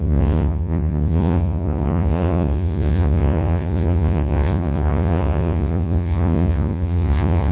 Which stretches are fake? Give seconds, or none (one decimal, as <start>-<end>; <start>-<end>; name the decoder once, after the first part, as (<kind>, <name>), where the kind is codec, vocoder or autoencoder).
0.0-7.5 (vocoder, Vocos)